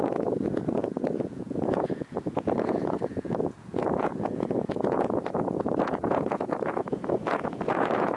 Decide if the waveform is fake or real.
fake